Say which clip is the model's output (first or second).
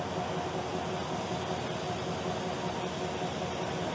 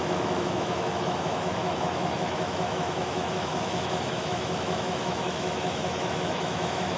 second